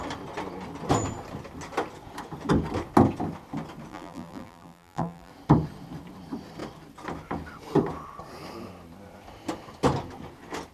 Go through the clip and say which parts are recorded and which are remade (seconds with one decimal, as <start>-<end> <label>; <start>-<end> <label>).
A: 0.0-3.9 recorded; 3.9-5.3 remade; 5.3-10.7 recorded